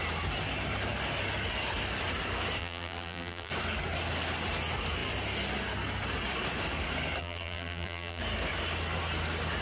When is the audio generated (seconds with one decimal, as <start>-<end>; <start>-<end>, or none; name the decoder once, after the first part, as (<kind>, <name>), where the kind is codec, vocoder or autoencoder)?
2.6-3.5 (vocoder, BigVGAN v2); 7.2-8.2